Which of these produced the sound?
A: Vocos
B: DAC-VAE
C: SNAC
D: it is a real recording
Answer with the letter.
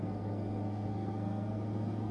C